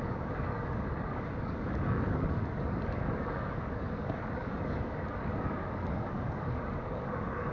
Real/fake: fake